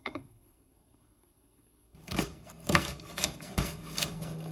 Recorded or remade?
remade